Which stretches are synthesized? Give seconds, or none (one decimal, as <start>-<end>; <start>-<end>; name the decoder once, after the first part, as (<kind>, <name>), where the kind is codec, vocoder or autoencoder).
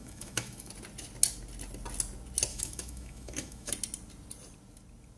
0.0-0.7 (autoencoder, DAC-VAE); 2.5-3.7